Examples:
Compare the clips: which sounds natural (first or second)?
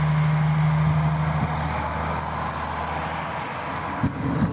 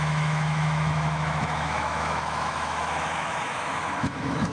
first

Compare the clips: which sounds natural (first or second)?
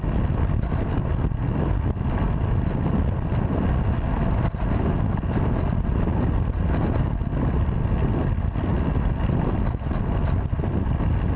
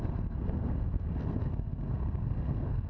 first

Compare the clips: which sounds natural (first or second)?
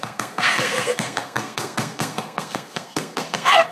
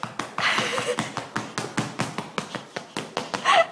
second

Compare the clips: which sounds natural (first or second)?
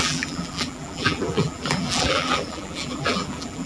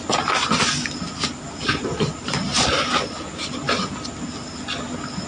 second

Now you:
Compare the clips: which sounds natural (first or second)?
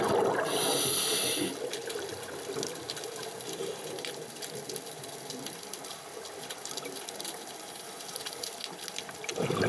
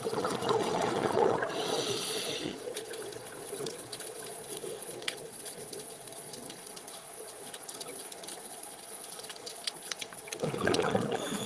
first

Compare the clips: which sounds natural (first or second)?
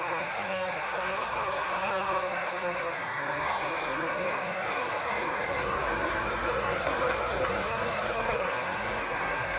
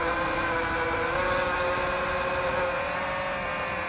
second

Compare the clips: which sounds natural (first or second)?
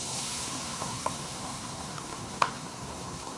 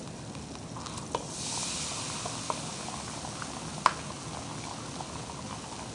second